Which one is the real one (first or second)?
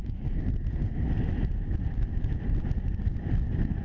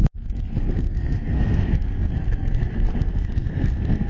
first